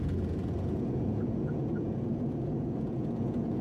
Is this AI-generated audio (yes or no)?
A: yes